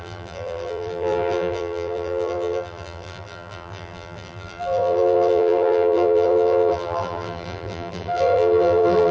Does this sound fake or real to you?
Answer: fake